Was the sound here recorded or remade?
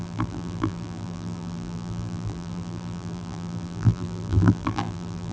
remade